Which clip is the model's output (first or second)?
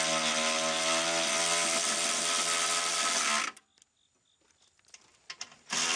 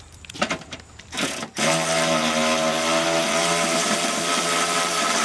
second